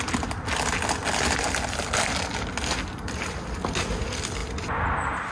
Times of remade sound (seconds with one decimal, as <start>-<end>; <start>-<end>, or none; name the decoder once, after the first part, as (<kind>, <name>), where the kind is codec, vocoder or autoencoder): none